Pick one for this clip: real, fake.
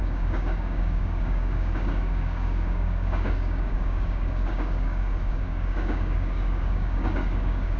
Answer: fake